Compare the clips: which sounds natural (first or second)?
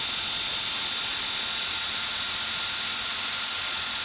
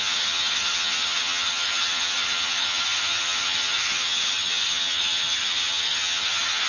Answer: first